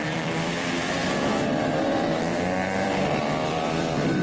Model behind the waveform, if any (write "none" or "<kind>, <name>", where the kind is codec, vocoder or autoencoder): vocoder, BigVGAN v2